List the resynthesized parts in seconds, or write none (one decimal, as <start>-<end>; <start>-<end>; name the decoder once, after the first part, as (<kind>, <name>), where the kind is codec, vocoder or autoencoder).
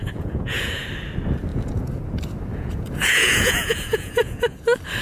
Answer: 0.0-0.8 (vocoder, Vocos); 1.5-2.0; 2.5-4.6